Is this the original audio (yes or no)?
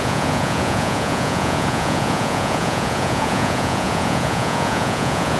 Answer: no